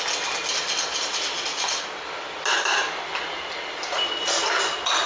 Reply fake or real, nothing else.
real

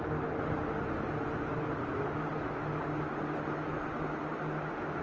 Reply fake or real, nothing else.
real